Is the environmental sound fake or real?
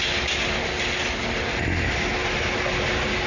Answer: real